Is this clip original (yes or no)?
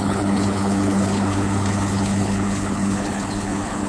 no